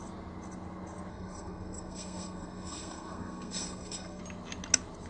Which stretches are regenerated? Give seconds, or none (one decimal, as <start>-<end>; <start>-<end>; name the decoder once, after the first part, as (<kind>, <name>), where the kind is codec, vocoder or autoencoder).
1.1-4.2 (codec, SNAC)